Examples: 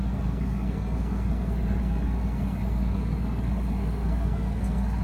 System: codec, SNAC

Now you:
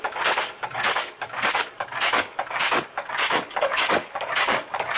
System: codec, DAC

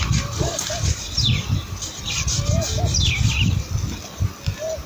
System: none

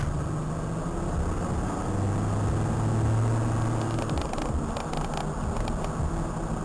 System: none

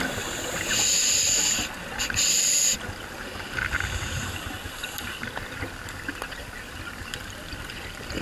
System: none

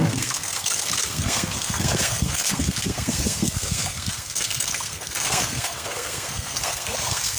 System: codec, SNAC